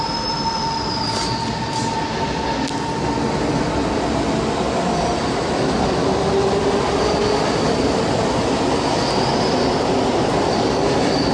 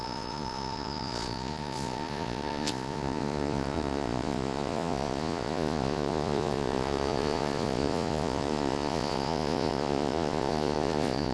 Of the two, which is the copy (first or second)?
second